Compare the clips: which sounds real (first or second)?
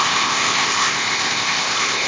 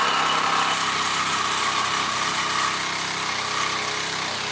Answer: second